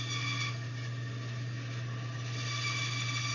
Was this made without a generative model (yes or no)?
yes